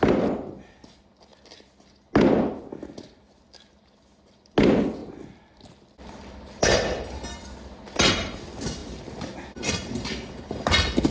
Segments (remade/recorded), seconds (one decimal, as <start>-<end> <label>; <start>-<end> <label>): 0.0-11.1 recorded